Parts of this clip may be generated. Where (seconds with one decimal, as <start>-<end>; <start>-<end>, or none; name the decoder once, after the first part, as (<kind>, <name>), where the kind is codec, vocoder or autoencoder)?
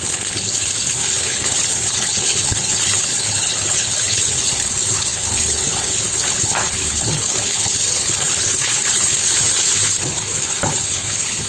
0.0-11.5 (codec, HILCodec)